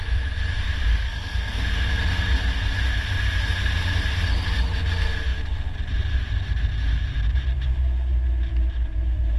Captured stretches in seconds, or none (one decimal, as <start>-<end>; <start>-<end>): 0.0-0.9; 1.6-9.4